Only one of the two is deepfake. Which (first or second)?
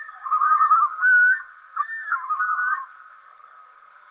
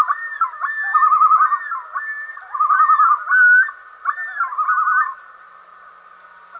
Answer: first